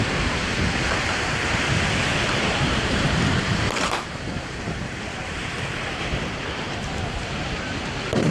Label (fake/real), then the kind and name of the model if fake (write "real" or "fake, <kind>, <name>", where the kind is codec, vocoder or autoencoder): fake, vocoder, BigVGAN v2